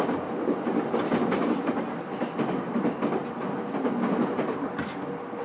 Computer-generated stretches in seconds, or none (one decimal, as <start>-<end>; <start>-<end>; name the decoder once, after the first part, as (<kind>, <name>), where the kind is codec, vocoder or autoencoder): none